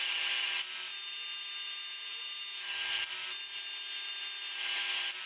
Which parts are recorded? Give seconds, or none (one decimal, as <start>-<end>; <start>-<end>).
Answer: 0.0-5.3